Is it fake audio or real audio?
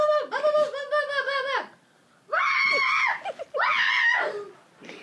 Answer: real